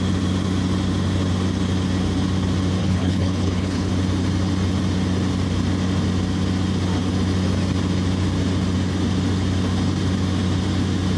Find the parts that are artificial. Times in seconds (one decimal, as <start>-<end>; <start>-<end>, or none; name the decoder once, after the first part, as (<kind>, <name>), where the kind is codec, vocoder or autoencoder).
2.8-3.9 (codec, HILCodec)